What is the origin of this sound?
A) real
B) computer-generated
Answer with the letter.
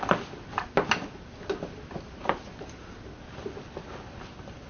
A